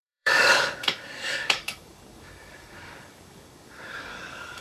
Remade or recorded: remade